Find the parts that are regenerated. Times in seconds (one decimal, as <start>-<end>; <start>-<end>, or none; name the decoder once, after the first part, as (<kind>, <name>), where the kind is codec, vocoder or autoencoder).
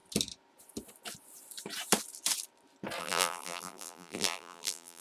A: 3.0-5.0 (vocoder, BigVGAN v2)